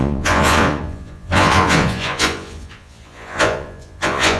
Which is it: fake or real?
fake